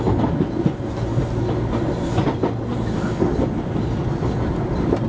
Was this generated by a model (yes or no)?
no